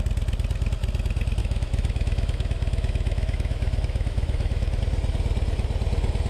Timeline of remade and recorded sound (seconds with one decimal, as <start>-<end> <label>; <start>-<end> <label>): 0.0-1.4 recorded; 1.4-4.8 remade; 4.8-6.3 recorded

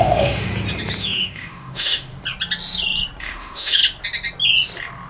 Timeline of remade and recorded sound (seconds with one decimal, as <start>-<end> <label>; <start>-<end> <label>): 0.0-0.5 remade; 0.5-1.0 recorded; 1.0-2.1 remade; 2.1-3.2 recorded; 3.2-3.8 remade; 3.8-5.1 recorded

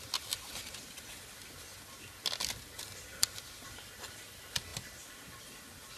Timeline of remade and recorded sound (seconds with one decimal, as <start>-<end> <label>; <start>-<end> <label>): 0.0-6.0 recorded

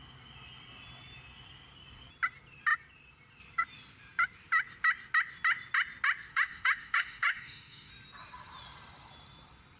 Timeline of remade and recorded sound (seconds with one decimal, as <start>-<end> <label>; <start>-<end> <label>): 0.0-6.3 recorded; 6.3-7.9 remade; 7.9-9.8 recorded

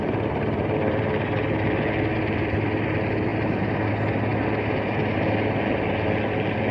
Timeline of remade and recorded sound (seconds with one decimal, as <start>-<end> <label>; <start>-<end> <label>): 0.0-6.7 recorded

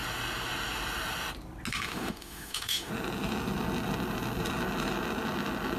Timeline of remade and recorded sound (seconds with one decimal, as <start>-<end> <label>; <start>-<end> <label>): 0.0-1.7 recorded; 1.7-2.9 remade; 2.9-5.8 recorded